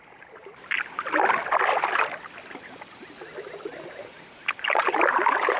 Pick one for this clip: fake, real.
real